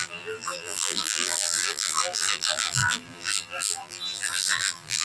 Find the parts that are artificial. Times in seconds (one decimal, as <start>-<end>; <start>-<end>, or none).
0.0-5.0